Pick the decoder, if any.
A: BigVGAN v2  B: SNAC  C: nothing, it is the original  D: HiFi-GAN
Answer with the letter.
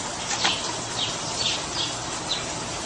C